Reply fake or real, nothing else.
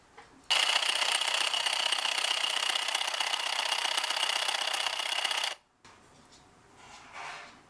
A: real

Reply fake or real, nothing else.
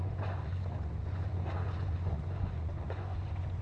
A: fake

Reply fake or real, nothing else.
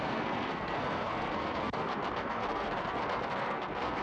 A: fake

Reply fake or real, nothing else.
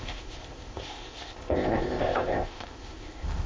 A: fake